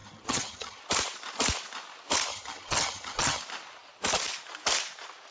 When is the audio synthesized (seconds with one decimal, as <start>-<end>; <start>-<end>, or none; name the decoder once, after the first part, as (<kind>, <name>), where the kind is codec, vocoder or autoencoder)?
0.0-0.8 (vocoder, HiFi-GAN); 2.3-3.4